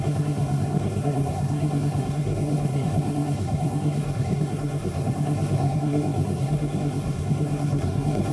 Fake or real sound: fake